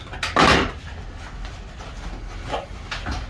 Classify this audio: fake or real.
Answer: real